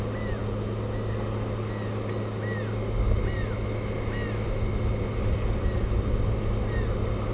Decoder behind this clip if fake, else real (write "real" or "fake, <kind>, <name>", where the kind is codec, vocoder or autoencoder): real